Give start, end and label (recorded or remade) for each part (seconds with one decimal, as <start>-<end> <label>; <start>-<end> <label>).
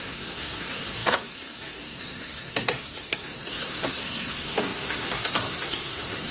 0.0-6.3 remade